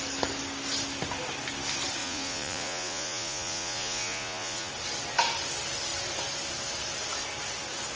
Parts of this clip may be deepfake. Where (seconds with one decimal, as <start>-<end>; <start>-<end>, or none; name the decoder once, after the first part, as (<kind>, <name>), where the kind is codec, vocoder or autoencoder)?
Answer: 2.0-4.7 (vocoder, Vocos)